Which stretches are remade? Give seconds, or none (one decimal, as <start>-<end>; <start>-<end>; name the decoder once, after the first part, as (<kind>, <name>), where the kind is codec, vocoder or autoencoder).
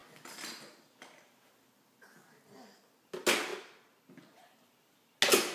none